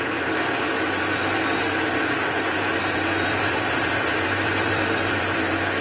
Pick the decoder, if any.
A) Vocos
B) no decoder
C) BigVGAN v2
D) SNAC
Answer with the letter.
C